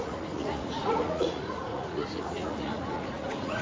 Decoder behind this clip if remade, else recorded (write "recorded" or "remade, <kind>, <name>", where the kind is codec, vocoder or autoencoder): remade, vocoder, Vocos